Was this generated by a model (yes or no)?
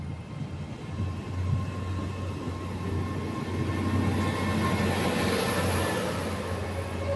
no